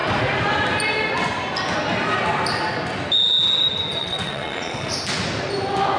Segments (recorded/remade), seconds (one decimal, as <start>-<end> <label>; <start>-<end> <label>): 0.0-4.0 recorded; 4.0-4.9 remade; 4.9-6.0 recorded